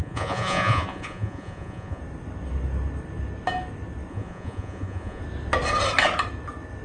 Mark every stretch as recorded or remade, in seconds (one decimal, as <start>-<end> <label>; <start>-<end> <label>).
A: 0.0-2.0 remade; 2.0-4.1 recorded; 4.1-5.2 remade; 5.2-6.8 recorded